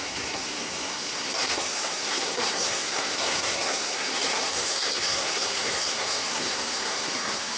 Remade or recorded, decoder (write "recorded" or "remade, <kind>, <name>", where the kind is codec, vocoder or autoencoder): remade, codec, SNAC